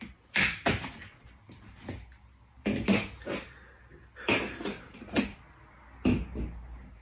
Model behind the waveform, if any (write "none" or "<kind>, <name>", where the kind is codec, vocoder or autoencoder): none